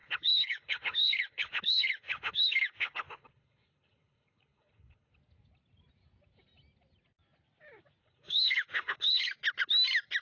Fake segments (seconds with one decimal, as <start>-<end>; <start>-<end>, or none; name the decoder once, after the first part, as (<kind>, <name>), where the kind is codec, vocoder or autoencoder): 0.0-5.1 (codec, HILCodec); 8.0-9.3